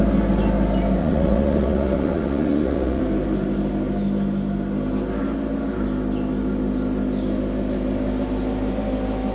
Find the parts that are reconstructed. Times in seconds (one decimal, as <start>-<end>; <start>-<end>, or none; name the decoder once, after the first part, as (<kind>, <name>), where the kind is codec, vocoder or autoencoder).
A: 1.0-3.0 (vocoder, Vocos)